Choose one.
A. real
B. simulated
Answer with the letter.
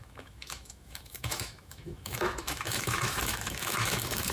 B